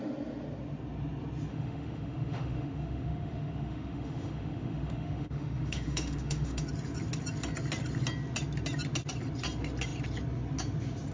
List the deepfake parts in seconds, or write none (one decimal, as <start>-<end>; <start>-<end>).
1.5-6.6